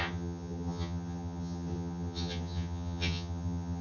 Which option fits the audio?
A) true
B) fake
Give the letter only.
B